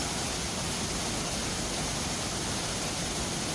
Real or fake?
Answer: real